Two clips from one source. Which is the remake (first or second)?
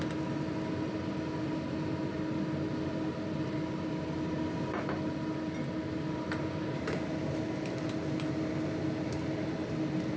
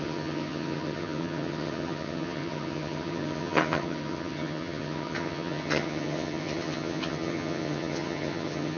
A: second